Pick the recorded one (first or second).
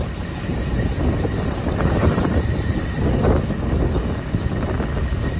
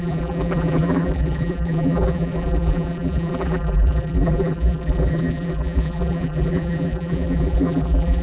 first